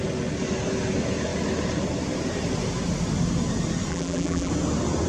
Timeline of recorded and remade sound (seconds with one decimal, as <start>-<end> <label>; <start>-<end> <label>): 0.0-3.9 recorded; 3.9-4.5 remade; 4.5-5.1 recorded